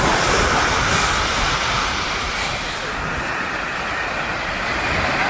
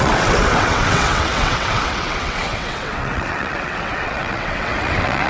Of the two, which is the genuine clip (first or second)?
first